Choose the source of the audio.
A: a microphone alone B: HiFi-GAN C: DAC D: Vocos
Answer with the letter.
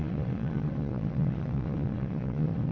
D